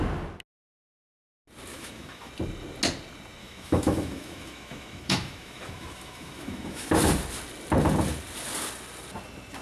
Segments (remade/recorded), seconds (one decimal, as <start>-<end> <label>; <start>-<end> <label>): 0.0-1.7 recorded; 1.7-2.3 remade; 2.3-3.4 recorded; 3.4-6.9 remade; 6.9-9.6 recorded